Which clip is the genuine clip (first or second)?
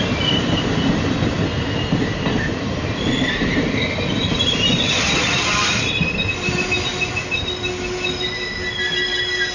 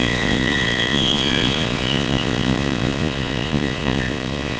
first